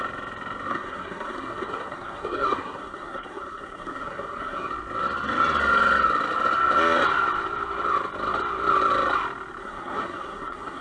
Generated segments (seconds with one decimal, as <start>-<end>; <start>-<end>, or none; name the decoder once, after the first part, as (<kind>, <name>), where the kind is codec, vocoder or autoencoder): 0.7-4.7 (codec, SNAC); 9.6-10.8